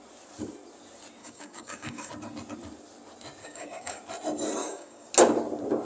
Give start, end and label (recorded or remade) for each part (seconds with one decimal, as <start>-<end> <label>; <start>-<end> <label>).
0.0-1.2 recorded; 1.2-2.1 remade; 2.1-3.4 recorded; 3.4-4.0 remade; 4.0-4.6 recorded; 4.6-5.1 remade; 5.1-5.8 recorded